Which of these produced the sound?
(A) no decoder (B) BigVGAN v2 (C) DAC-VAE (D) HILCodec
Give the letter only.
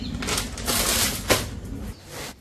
A